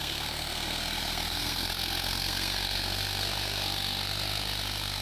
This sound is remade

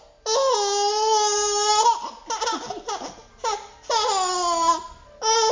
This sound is recorded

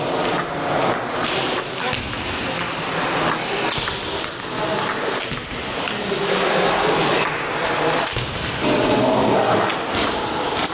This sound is recorded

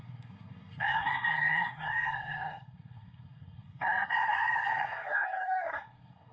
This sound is remade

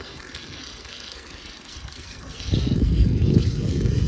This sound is remade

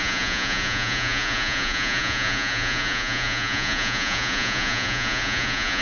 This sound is remade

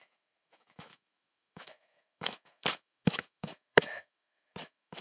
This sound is remade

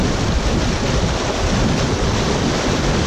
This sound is recorded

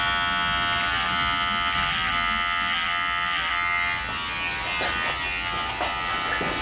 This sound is recorded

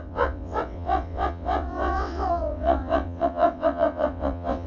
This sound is remade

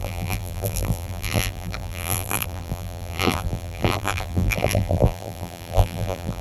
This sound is remade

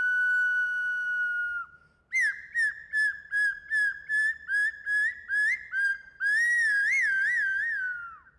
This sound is recorded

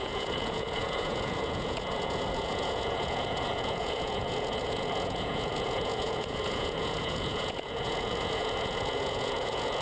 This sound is remade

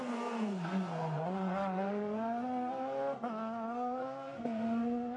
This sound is remade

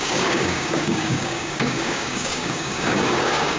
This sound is remade